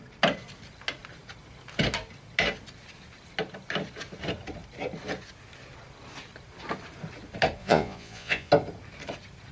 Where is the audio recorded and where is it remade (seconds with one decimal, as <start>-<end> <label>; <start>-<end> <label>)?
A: 0.0-7.6 recorded; 7.6-8.5 remade; 8.5-9.5 recorded